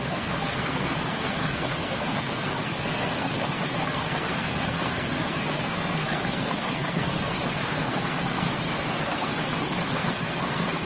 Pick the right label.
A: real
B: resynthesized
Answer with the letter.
B